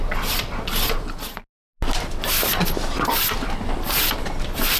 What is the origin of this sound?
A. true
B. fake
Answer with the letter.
A